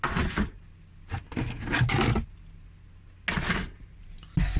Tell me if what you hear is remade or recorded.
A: recorded